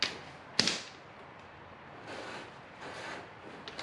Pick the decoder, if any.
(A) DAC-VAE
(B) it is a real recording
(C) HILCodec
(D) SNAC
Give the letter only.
B